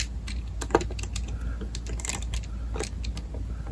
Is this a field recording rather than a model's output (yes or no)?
yes